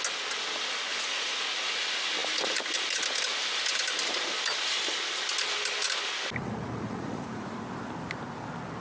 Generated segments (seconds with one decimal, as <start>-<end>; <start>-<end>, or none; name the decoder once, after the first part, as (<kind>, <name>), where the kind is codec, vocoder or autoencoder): 0.9-1.5 (vocoder, Vocos); 6.4-7.5